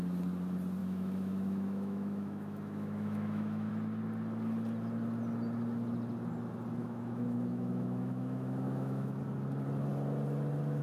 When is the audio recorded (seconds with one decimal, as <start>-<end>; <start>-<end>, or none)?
0.0-0.8; 3.7-6.8; 9.2-10.8